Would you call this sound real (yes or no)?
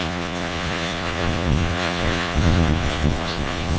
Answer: no